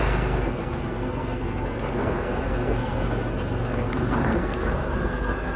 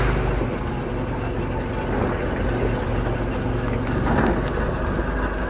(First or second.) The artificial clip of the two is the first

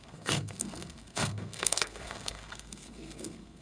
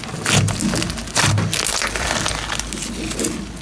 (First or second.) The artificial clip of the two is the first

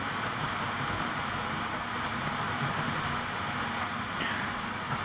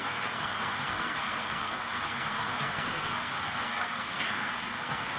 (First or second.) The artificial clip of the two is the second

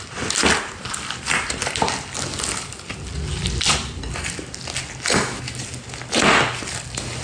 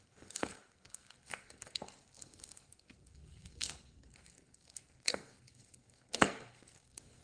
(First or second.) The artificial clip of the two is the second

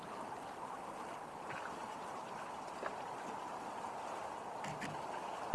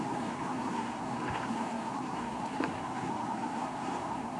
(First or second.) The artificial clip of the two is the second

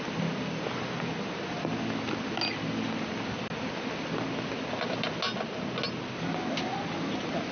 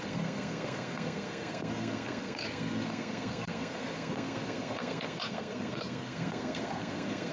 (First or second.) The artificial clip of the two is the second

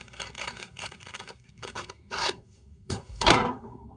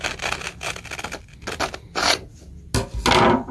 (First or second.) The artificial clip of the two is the first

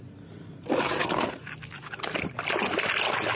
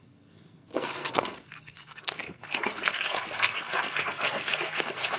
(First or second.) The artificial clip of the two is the second